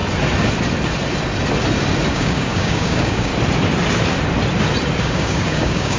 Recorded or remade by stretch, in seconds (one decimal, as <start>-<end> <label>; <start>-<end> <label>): 0.0-2.1 recorded; 2.1-3.3 remade; 3.3-5.0 recorded; 5.0-6.0 remade